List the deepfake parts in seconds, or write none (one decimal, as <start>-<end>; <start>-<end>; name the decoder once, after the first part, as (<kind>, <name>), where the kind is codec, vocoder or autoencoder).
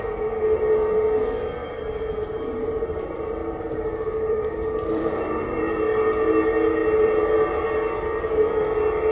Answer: 1.6-3.0 (vocoder, BigVGAN v2); 3.4-5.8